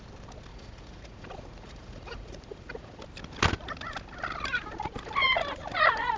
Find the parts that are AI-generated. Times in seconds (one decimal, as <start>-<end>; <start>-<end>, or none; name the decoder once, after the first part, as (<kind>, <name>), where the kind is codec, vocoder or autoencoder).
0.5-3.0 (vocoder, Vocos)